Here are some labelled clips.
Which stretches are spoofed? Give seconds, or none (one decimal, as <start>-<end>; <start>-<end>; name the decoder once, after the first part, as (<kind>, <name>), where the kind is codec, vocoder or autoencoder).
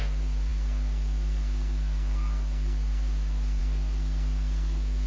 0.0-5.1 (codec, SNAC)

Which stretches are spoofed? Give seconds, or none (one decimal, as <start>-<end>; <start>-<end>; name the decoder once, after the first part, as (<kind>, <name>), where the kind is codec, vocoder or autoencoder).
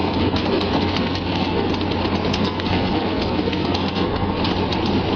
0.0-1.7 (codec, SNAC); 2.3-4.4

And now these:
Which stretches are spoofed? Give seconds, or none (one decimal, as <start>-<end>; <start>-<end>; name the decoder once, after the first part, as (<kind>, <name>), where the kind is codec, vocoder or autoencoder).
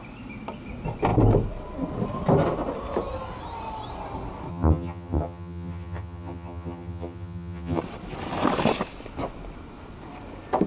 4.5-7.8 (vocoder, HiFi-GAN)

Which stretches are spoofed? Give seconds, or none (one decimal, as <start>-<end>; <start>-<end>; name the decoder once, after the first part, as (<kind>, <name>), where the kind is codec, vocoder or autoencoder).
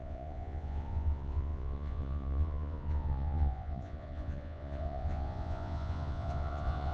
0.0-6.9 (vocoder, Vocos)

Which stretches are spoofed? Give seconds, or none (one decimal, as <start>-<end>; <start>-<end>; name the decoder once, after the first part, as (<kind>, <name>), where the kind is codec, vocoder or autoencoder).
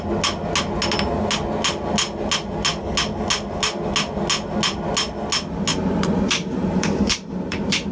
5.7-7.9 (vocoder, BigVGAN v2)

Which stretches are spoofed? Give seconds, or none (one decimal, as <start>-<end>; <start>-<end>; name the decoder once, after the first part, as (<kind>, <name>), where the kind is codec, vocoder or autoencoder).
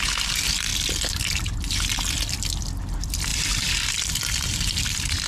3.3-5.3 (vocoder, BigVGAN v2)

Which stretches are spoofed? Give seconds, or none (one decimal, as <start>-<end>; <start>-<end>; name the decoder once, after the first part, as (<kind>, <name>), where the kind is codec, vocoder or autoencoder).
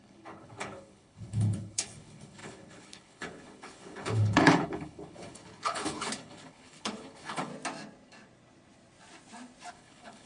0.0-7.5 (codec, HILCodec); 9.7-10.3